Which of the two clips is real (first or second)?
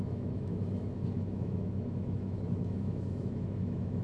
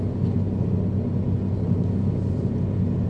second